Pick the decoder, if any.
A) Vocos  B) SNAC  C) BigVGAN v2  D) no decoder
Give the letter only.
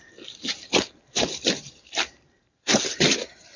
C